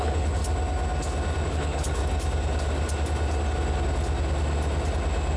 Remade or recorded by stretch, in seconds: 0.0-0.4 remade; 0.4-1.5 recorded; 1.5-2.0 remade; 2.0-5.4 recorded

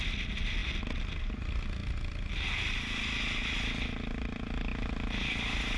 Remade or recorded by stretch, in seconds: 0.0-5.8 recorded

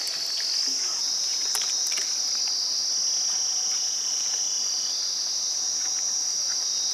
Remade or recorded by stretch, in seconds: 0.0-1.0 recorded; 1.0-2.2 remade; 2.2-6.9 recorded

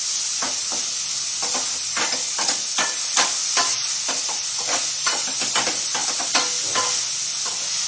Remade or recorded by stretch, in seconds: 0.0-7.9 recorded

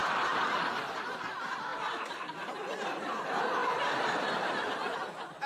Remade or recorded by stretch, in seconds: 0.0-1.7 recorded; 1.7-3.2 remade; 3.2-3.6 recorded; 3.6-4.1 remade; 4.1-5.5 recorded